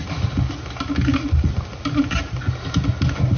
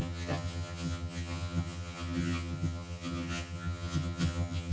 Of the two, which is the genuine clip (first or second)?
first